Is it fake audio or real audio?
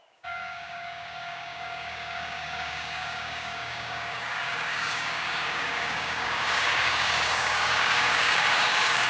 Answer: fake